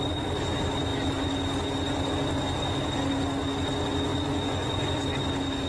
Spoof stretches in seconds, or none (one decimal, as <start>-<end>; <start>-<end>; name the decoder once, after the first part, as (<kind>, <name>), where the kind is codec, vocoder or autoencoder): 4.1-4.9 (vocoder, Vocos)